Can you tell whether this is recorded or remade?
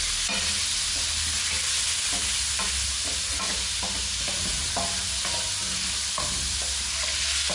recorded